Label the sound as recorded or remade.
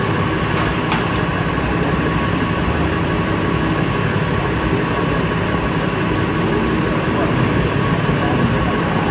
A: recorded